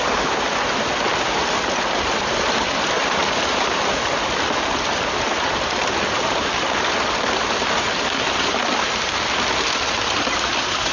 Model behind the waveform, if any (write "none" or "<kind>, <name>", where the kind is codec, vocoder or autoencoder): none